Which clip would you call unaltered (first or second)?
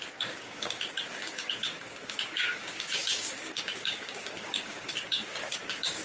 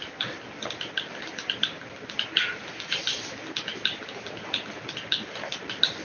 second